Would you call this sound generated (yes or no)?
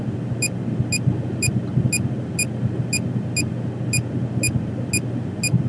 no